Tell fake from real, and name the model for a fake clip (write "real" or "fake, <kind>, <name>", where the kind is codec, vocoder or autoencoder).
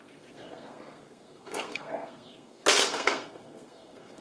fake, codec, SNAC